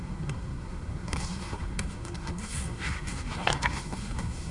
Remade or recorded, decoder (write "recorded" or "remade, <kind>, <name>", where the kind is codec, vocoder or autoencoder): remade, codec, SNAC